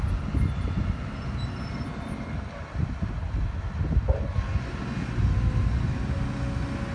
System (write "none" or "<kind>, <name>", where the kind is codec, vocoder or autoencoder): none